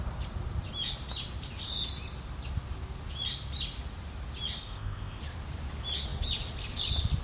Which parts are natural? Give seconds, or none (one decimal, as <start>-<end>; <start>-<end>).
0.0-4.6; 5.2-7.2